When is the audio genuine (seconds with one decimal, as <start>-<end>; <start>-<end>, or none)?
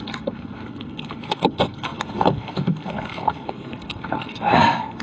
none